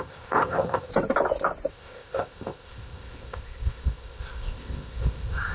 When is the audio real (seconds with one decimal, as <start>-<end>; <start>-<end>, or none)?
0.9-1.7